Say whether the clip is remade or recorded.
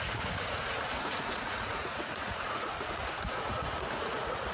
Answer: remade